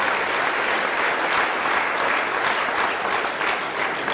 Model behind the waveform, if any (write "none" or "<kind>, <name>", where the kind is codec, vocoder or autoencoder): none